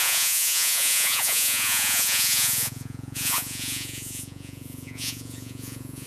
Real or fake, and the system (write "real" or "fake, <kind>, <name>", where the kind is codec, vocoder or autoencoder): fake, vocoder, Vocos